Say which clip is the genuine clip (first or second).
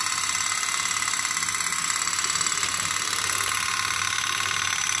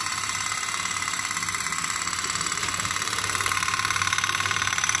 first